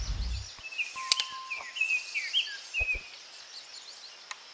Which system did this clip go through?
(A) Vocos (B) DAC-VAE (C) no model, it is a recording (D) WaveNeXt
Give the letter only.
C